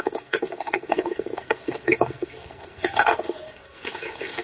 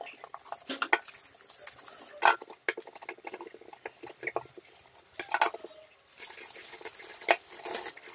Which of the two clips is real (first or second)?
second